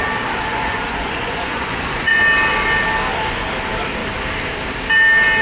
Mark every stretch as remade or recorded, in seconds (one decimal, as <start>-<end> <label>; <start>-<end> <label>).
0.0-0.5 recorded; 0.5-2.2 remade; 2.2-5.4 recorded